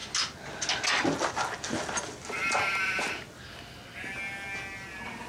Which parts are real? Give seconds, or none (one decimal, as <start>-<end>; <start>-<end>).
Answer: 0.0-5.3